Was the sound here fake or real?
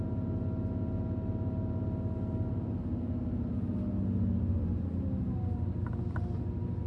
real